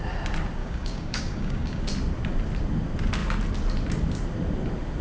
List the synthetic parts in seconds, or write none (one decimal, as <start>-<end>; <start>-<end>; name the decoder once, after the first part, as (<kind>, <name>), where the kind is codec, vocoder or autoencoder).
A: 0.6-1.8 (codec, DAC)